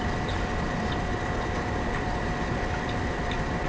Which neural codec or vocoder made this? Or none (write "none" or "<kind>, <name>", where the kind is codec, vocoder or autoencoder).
vocoder, BigVGAN v2